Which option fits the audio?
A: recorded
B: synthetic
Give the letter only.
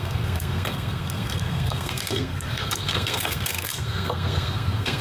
B